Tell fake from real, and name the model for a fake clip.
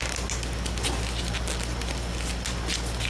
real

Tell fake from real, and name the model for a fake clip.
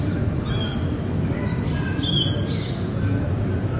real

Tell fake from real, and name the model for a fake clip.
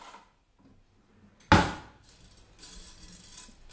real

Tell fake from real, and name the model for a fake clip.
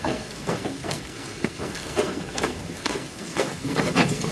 fake, codec, SNAC